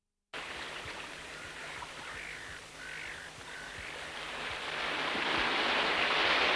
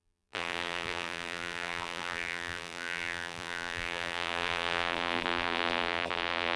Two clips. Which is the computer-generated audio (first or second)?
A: second